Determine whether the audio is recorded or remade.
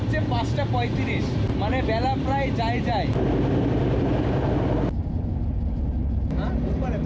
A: recorded